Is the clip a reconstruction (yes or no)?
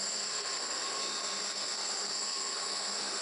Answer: yes